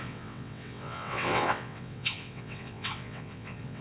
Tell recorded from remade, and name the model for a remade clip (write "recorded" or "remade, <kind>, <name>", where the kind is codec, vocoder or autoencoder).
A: remade, vocoder, WaveNeXt